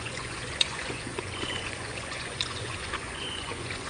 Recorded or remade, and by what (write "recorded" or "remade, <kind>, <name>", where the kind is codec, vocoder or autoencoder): remade, vocoder, Vocos